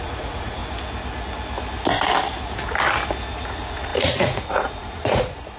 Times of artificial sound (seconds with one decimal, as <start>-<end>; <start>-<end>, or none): 0.0-0.6; 3.5-5.6